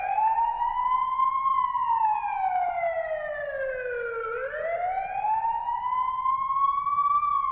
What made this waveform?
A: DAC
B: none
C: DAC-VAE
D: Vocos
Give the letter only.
B